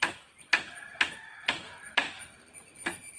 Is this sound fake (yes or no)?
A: no